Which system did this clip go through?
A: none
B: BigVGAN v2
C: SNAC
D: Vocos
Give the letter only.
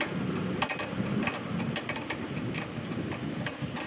A